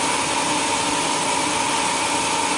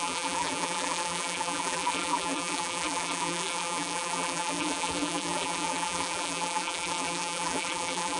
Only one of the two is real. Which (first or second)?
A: first